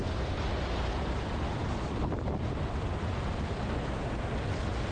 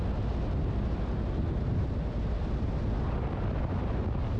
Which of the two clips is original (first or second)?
second